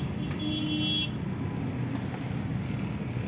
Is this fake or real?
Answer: real